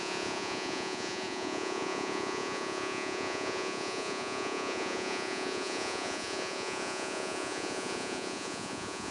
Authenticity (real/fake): fake